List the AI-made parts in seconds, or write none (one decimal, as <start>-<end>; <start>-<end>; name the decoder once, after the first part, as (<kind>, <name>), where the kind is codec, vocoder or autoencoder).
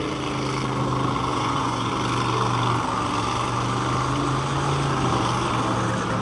1.3-1.9 (vocoder, Vocos)